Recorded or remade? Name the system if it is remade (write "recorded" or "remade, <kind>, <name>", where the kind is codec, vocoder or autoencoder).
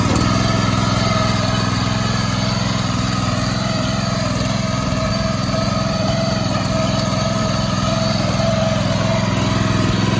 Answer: recorded